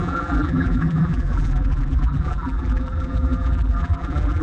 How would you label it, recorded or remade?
remade